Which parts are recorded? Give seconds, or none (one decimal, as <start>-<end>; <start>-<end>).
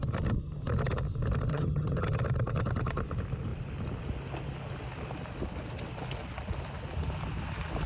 0.0-1.5; 2.0-7.9